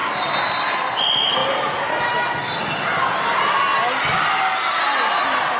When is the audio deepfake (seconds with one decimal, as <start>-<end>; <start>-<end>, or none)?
none